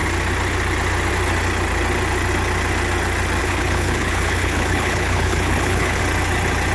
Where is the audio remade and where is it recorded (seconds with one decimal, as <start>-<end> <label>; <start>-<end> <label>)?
0.0-3.4 recorded; 3.4-6.0 remade; 6.0-6.7 recorded